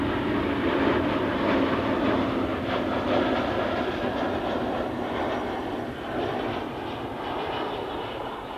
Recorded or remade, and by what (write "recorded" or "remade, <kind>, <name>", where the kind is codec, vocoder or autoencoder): recorded